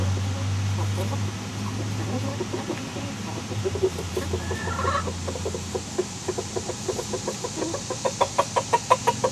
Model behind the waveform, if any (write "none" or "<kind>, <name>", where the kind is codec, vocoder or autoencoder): none